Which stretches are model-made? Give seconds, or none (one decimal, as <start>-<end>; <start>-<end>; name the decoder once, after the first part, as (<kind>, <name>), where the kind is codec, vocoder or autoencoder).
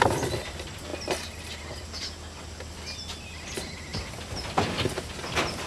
none